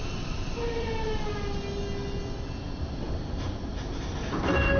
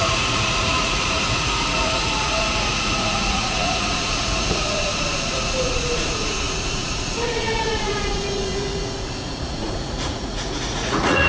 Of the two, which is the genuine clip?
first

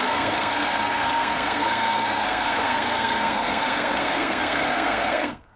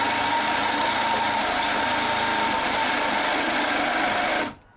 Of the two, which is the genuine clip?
second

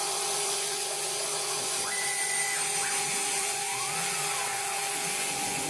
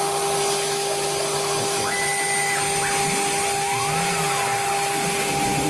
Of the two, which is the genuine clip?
second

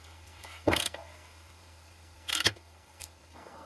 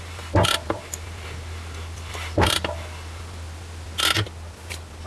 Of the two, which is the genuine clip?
second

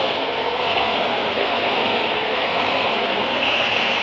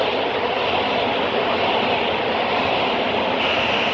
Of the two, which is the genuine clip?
second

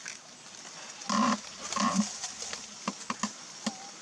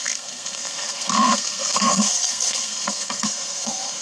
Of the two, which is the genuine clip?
first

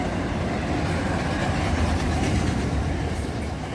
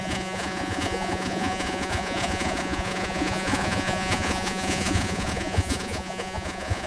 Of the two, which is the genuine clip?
first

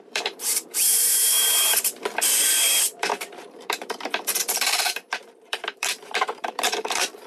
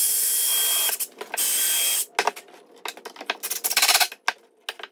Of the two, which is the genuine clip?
second